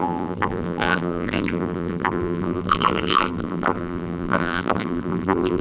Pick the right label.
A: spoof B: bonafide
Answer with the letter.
A